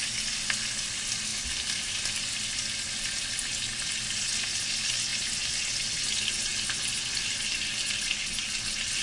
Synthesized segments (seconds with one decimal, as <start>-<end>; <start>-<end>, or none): none